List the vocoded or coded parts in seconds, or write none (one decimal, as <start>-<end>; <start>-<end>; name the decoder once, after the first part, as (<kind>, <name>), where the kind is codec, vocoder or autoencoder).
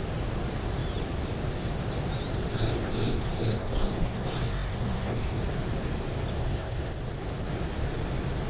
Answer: 2.5-5.4 (codec, SNAC); 6.4-6.9